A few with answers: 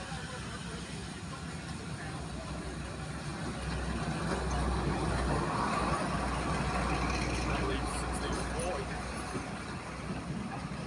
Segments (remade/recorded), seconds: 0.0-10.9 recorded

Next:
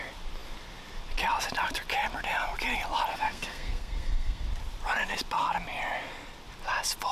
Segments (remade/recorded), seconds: 0.0-3.1 recorded; 3.1-4.5 remade; 4.5-7.1 recorded

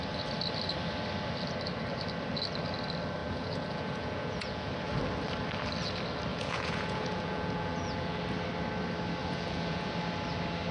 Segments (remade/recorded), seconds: 0.0-3.2 recorded; 3.2-4.7 remade; 4.7-6.3 recorded; 6.3-8.2 remade; 8.2-9.2 recorded; 9.2-9.9 remade; 9.9-10.7 recorded

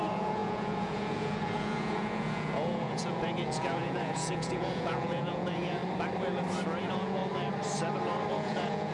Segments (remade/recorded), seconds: 0.0-5.8 remade; 5.8-6.8 recorded; 6.8-7.2 remade; 7.2-8.3 recorded; 8.3-8.9 remade

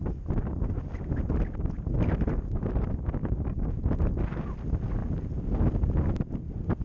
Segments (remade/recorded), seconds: 0.0-3.2 recorded; 3.2-3.7 remade; 3.7-6.8 recorded

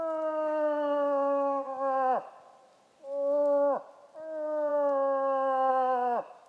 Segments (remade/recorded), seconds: 0.0-6.5 recorded

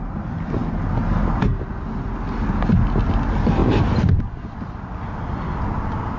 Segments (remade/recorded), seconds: 0.0-6.2 recorded